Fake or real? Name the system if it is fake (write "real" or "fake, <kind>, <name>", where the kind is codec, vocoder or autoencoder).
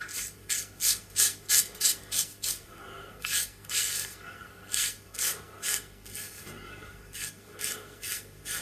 fake, codec, SNAC